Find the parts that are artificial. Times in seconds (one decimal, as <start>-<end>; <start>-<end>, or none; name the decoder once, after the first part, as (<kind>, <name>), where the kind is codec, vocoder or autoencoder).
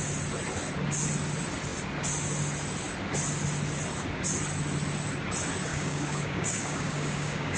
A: 5.7-7.6 (codec, DAC)